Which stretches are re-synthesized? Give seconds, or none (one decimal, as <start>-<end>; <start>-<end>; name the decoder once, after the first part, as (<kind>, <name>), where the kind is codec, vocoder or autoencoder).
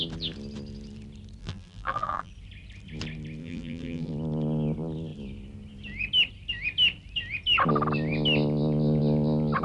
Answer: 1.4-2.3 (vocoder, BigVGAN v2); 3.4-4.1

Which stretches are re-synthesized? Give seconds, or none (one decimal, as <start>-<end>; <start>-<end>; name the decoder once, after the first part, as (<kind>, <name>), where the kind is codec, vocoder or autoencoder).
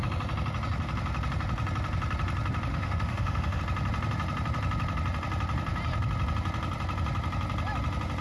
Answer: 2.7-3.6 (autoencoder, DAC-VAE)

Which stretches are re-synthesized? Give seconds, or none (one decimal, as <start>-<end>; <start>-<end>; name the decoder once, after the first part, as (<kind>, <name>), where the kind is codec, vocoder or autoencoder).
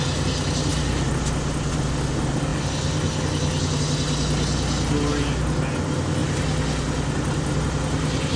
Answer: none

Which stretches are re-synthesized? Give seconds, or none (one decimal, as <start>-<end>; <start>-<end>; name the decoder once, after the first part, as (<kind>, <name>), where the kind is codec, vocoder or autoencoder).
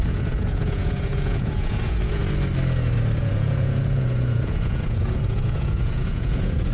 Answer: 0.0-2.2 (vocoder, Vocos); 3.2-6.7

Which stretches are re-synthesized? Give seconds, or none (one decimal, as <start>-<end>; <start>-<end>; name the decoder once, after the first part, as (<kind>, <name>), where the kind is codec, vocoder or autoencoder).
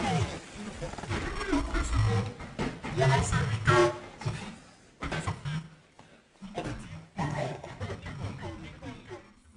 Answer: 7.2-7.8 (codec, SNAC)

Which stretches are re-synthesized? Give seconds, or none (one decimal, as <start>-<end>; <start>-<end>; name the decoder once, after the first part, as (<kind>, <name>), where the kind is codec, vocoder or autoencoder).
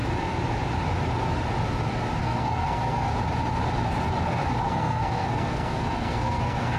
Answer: 2.2-3.1 (codec, SNAC); 4.6-6.8